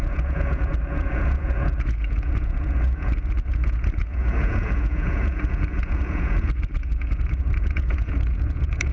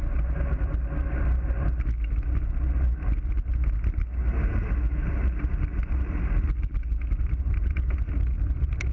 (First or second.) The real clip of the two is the second